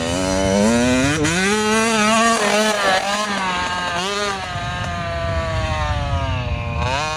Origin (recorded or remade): recorded